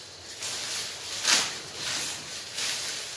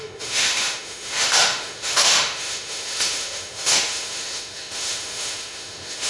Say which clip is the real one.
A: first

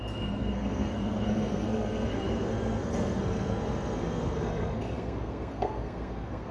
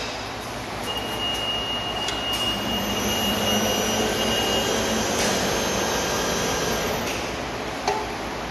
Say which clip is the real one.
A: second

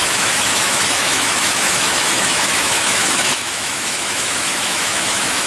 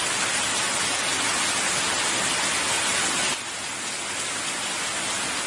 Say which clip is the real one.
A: second